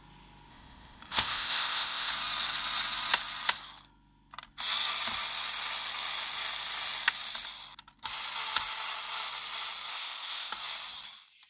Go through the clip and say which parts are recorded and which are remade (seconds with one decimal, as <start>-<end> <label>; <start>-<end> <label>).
0.0-0.5 recorded; 0.5-2.1 remade; 2.1-9.9 recorded; 9.9-10.5 remade; 10.5-11.5 recorded